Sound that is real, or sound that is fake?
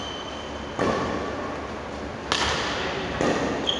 real